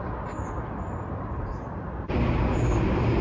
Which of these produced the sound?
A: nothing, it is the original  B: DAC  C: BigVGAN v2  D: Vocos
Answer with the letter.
A